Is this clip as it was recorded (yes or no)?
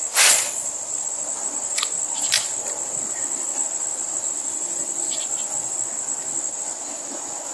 yes